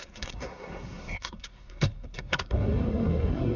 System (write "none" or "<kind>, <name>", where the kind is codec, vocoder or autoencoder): codec, SNAC